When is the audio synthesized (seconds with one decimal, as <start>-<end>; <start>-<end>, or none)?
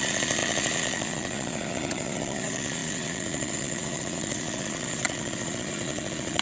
0.0-6.4